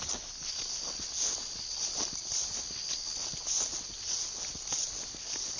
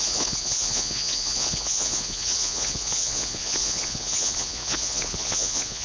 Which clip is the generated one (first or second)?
second